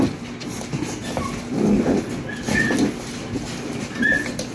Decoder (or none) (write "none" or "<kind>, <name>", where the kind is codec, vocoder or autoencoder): none